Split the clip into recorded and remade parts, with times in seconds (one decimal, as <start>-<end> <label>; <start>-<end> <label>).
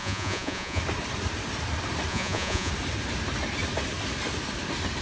0.0-0.8 remade; 0.8-2.1 recorded; 2.1-2.7 remade; 2.7-5.0 recorded